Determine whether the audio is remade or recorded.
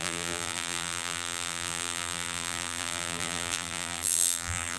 remade